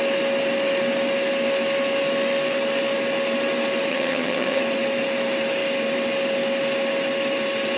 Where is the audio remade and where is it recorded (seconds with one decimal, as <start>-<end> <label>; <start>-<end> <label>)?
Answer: 0.0-3.9 recorded; 3.9-4.6 remade; 4.6-7.8 recorded